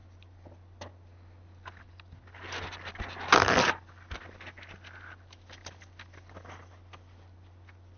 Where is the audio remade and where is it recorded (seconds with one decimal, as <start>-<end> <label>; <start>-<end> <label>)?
0.0-8.0 recorded

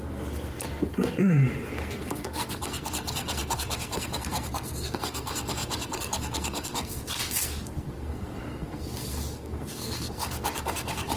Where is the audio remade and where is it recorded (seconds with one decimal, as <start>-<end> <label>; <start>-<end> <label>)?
0.0-11.2 remade

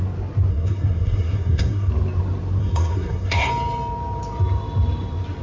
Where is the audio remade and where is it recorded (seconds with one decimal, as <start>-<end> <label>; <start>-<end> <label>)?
0.0-0.5 recorded; 0.5-1.9 remade; 1.9-2.6 recorded; 2.6-3.5 remade; 3.5-5.4 recorded

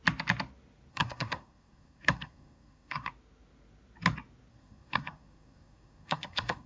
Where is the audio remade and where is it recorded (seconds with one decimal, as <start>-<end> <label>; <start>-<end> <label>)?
0.0-0.9 recorded; 0.9-3.1 remade; 3.1-4.5 recorded; 4.5-6.7 remade

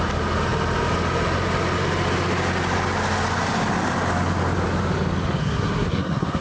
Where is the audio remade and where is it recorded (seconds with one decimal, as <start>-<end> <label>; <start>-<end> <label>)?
0.0-5.4 recorded; 5.4-6.4 remade